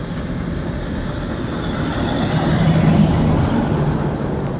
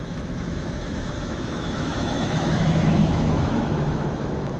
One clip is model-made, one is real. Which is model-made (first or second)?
second